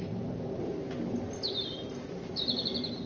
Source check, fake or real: real